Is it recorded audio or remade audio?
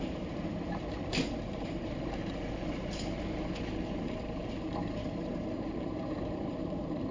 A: remade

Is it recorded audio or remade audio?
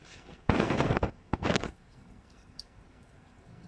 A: remade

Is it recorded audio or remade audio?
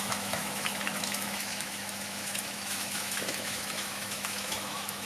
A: remade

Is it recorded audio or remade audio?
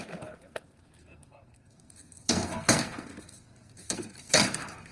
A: remade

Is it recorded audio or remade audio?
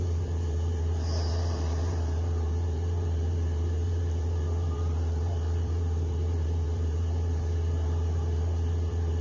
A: remade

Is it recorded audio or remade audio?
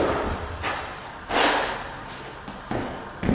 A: recorded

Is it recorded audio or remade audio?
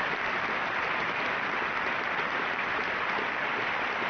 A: remade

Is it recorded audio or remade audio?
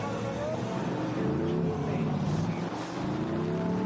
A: recorded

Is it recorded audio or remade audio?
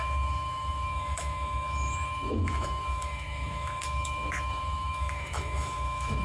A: remade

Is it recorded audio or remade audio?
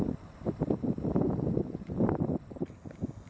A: recorded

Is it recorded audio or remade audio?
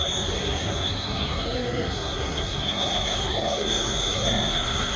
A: remade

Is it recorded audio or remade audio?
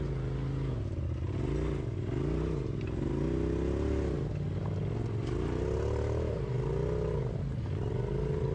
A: recorded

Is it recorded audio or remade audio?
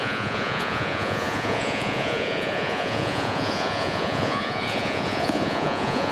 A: remade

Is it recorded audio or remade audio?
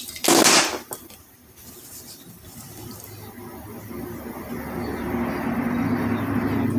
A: recorded